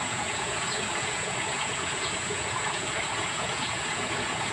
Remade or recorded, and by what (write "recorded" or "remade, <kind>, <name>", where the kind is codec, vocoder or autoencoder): remade, vocoder, Vocos